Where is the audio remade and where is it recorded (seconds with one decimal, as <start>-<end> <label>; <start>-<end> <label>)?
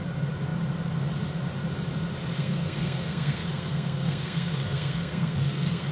0.0-2.3 recorded; 2.3-5.9 remade